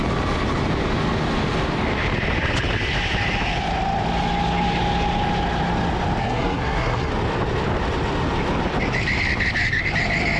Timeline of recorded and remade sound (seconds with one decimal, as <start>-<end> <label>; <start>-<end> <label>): 0.0-6.2 recorded; 6.2-7.1 remade; 7.1-10.4 recorded